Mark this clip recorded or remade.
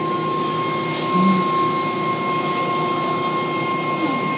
recorded